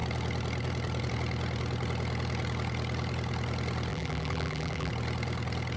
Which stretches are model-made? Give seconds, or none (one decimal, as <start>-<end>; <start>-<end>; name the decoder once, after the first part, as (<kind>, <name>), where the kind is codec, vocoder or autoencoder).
3.9-4.9 (vocoder, BigVGAN v2)